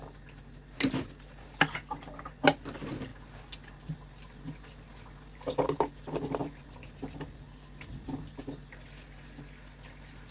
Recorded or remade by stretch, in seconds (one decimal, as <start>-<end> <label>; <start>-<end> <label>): 0.0-10.3 recorded